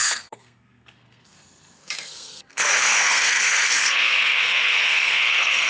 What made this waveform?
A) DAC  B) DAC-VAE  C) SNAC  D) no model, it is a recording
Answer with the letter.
C